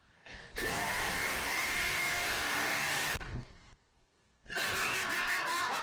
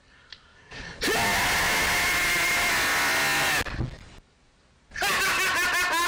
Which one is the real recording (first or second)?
second